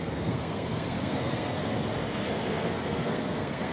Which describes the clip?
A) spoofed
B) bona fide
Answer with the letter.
A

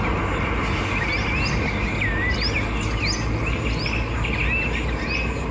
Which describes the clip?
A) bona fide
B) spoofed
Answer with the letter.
A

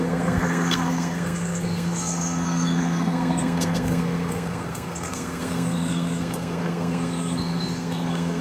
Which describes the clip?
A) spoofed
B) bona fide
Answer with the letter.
A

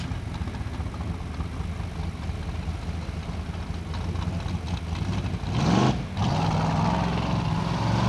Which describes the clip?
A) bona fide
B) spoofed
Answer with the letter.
A